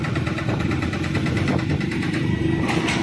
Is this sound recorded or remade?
remade